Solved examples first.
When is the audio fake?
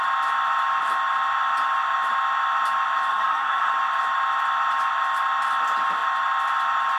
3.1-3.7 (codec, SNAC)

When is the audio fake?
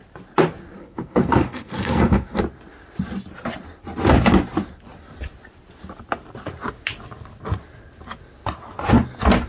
0.8-2.4 (codec, SNAC)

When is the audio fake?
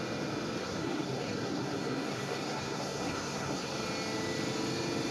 0.6-3.7 (codec, SNAC)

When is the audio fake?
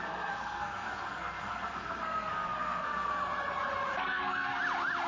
0.0-3.1 (codec, SNAC); 4.0-4.6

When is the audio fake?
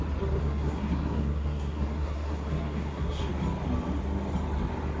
0.4-3.3 (codec, SNAC)